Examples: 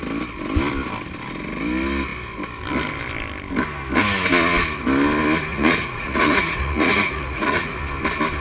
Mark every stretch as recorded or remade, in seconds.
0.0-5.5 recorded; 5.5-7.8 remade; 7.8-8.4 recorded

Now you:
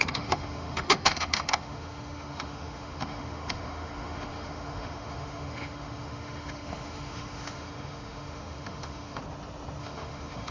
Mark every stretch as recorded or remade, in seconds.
0.0-9.2 remade; 9.2-9.8 recorded; 9.8-10.5 remade

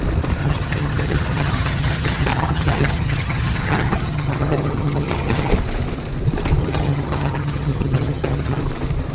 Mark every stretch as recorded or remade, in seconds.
0.0-0.4 recorded; 0.4-5.5 remade; 5.5-6.6 recorded; 6.6-8.6 remade; 8.6-9.1 recorded

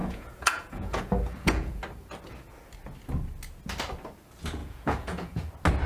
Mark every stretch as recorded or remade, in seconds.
0.0-1.8 remade; 1.8-4.6 recorded; 4.6-5.5 remade; 5.5-5.9 recorded

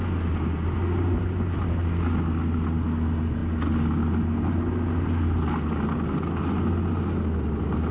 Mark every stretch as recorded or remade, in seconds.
0.0-7.9 recorded

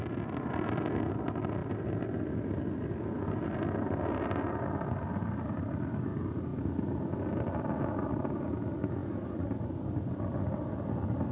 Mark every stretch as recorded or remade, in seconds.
0.0-11.3 recorded